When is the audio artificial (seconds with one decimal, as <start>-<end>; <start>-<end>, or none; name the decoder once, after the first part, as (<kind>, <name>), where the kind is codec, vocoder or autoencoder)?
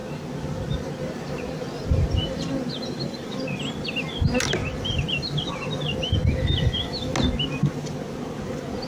4.6-5.5 (vocoder, BigVGAN v2)